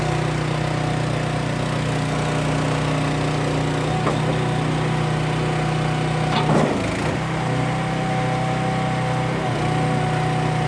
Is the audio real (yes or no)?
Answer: yes